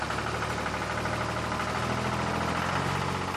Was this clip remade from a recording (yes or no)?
no